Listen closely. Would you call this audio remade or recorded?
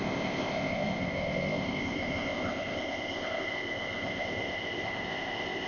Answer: remade